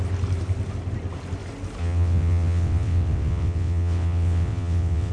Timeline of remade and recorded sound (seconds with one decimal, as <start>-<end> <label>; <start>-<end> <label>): 0.0-1.8 recorded; 1.8-5.1 remade